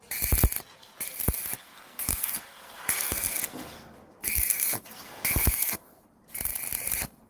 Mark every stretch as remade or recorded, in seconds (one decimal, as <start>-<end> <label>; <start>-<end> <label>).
0.0-1.6 recorded; 1.6-6.0 remade; 6.0-7.3 recorded